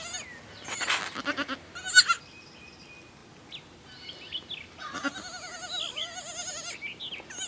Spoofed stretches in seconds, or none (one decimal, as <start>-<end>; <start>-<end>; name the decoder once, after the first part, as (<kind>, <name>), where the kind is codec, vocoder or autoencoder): none